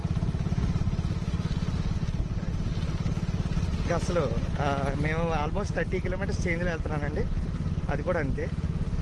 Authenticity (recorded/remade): recorded